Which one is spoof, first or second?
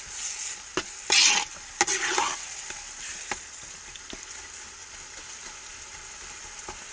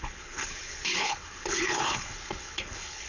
second